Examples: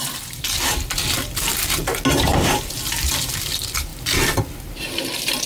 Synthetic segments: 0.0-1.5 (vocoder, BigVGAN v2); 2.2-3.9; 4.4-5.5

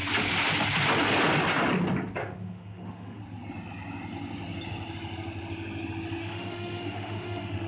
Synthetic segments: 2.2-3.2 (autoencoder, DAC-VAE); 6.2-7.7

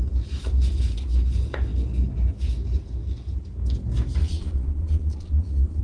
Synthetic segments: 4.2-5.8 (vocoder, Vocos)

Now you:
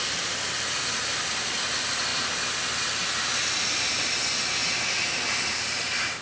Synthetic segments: 0.0-2.1 (vocoder, BigVGAN v2); 3.4-4.6; 5.4-6.2